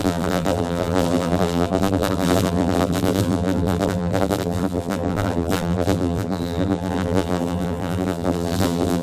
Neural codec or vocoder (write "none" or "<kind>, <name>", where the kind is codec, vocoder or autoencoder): vocoder, BigVGAN v2